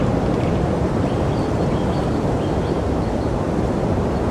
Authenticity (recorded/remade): remade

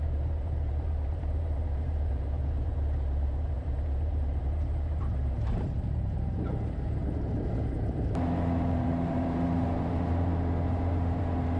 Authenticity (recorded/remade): remade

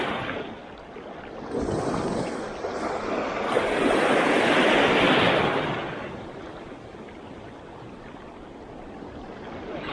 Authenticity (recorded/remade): recorded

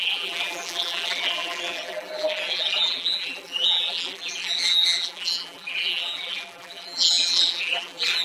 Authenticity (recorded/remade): remade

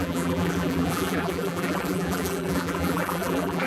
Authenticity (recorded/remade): remade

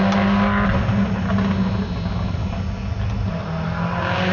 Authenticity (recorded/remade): recorded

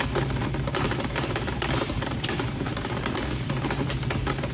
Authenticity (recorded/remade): remade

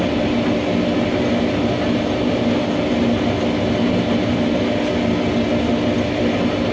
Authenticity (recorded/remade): recorded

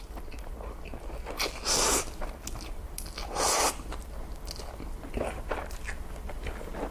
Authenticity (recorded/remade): recorded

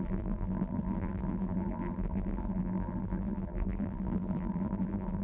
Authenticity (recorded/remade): remade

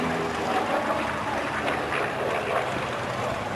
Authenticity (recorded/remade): recorded